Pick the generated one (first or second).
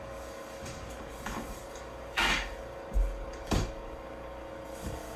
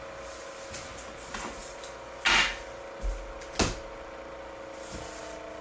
first